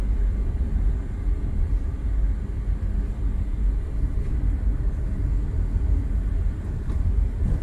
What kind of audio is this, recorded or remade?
recorded